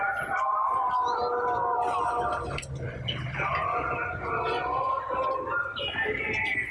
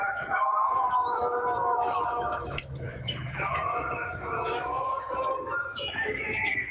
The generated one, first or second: second